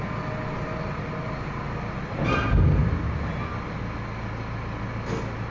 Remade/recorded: recorded